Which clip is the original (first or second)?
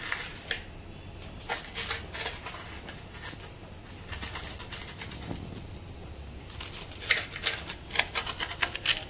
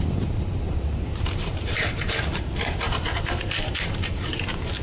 first